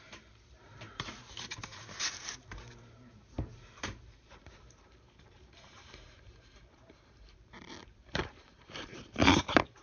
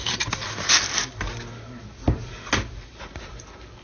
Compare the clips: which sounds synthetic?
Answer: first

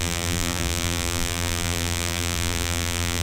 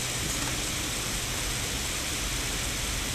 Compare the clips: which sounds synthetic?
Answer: first